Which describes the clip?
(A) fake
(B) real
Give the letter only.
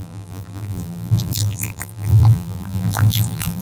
A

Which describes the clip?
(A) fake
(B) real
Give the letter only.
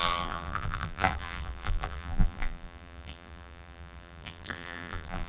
A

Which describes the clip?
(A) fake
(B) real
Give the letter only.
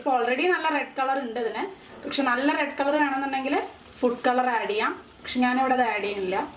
A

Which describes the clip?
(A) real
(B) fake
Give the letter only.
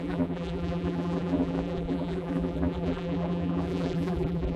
B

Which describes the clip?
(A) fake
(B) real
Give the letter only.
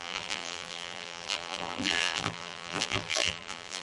A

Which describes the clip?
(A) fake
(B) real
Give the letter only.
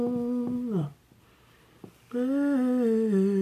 B